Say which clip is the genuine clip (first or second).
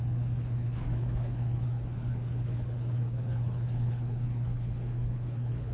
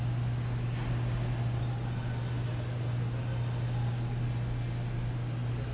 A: second